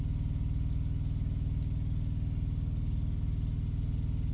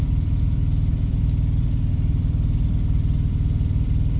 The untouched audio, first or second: first